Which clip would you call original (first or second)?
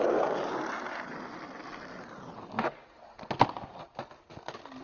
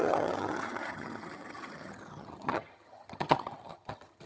first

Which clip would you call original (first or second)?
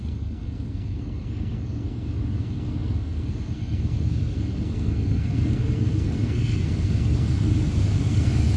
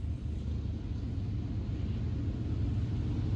second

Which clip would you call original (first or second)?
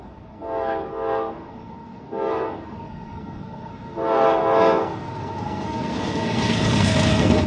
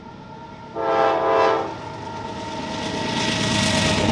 second